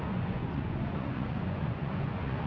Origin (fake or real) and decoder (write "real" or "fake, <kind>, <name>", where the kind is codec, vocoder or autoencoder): fake, vocoder, Vocos